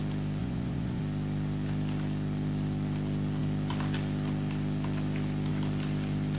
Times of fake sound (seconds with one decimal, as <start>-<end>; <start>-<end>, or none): 0.4-1.0